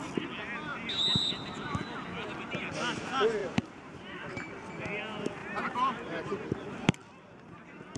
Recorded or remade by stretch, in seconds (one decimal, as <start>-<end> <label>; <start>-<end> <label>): 0.0-3.4 recorded; 3.4-4.5 remade; 4.5-5.4 recorded; 5.4-6.7 remade; 6.7-8.0 recorded